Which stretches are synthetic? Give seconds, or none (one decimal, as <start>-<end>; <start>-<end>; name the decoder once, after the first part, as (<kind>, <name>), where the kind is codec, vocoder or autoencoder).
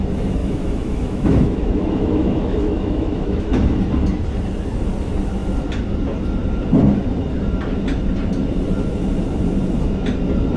0.4-3.8 (autoencoder, DAC-VAE)